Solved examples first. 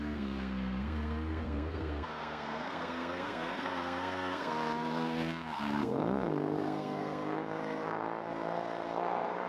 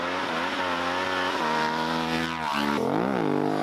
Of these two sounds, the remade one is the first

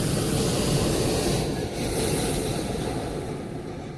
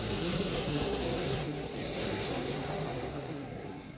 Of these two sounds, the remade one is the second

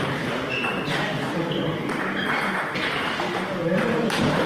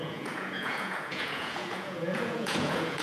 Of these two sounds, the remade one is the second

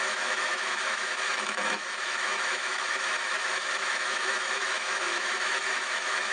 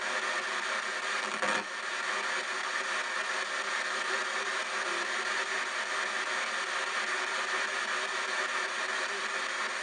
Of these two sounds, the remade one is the first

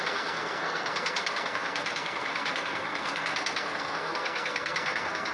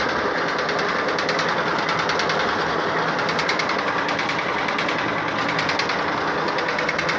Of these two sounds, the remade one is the first